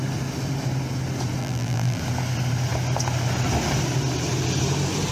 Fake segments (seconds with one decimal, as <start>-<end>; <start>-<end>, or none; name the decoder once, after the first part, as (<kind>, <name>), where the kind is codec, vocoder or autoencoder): 1.4-2.0 (vocoder, BigVGAN v2)